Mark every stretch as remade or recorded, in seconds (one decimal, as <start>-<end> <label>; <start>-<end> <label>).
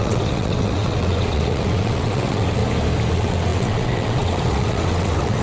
0.0-2.6 remade; 2.6-3.1 recorded; 3.1-5.4 remade